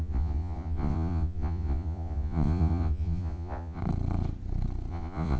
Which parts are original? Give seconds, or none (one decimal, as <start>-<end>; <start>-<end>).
3.8-4.9